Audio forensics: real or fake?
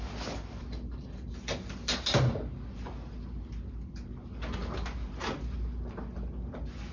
real